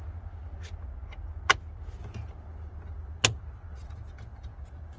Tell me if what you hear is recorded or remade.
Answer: recorded